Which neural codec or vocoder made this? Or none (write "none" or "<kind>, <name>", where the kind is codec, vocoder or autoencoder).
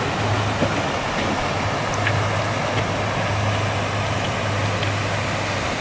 none